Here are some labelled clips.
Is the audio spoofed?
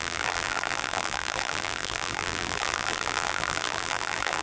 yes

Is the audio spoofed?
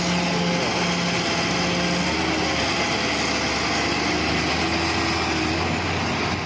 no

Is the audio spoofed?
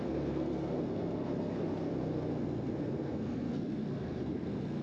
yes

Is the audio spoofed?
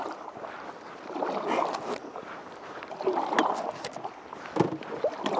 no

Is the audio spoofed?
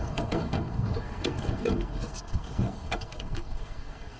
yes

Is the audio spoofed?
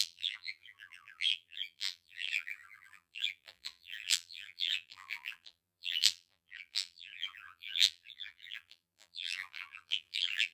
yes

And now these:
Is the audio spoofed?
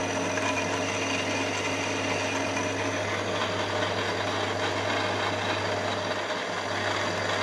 no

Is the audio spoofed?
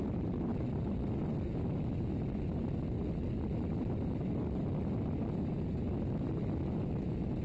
no